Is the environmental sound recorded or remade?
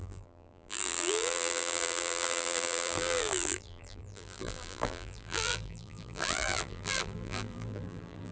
remade